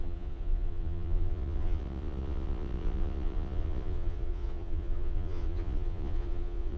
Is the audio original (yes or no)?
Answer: no